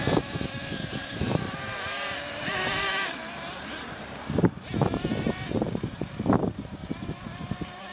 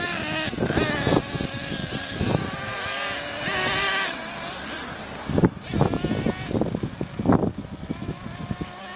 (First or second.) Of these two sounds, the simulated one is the first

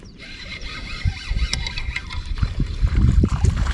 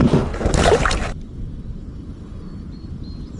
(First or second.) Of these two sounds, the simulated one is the first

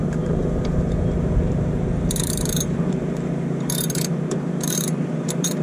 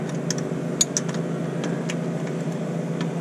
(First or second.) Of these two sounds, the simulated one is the first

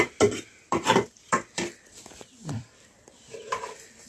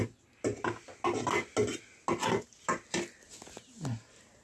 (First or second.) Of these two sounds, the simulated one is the first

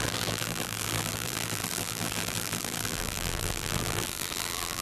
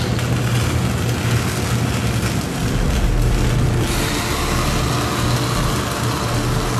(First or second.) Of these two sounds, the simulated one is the first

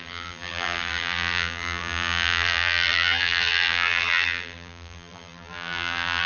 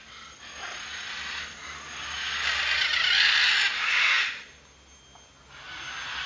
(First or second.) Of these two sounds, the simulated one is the first